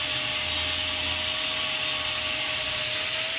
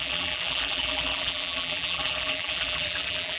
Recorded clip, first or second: first